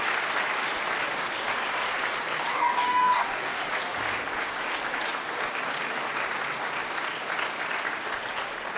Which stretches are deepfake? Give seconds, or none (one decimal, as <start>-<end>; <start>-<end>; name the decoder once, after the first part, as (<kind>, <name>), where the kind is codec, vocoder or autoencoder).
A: 2.5-3.6 (codec, DAC)